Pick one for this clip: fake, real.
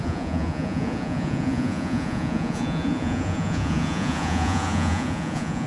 fake